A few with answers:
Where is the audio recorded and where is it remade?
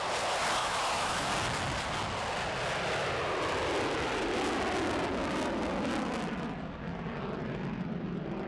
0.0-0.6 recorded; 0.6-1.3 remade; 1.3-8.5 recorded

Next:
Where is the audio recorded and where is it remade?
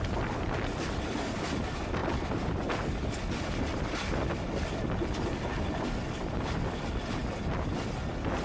0.0-8.4 recorded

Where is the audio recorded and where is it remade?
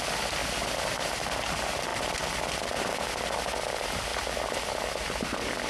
0.0-5.7 recorded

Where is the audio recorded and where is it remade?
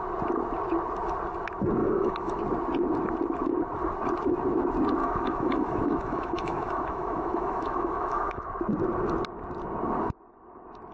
0.0-1.8 recorded; 1.8-2.4 remade; 2.4-5.0 recorded; 5.0-8.5 remade; 8.5-10.9 recorded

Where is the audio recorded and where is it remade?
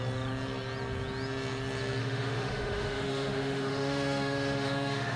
0.0-2.0 recorded; 2.0-5.2 remade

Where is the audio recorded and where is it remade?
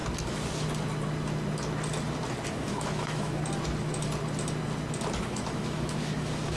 0.0-2.5 recorded; 2.5-3.4 remade; 3.4-5.2 recorded; 5.2-6.6 remade